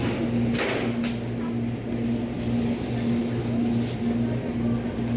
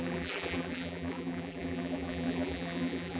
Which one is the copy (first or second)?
second